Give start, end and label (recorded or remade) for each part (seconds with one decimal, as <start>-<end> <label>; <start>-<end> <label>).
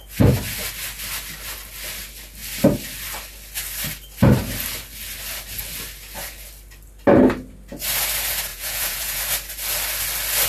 0.0-8.5 recorded; 8.5-9.2 remade; 9.2-10.5 recorded